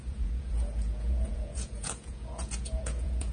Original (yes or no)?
no